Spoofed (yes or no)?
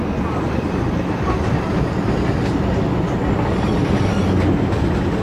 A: no